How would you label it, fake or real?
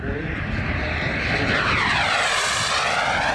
real